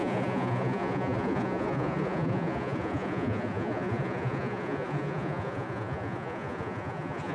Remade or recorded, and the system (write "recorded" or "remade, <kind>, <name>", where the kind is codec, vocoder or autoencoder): remade, vocoder, Vocos